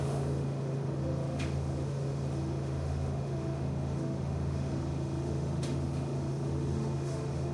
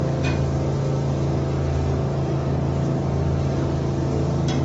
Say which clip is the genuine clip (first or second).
second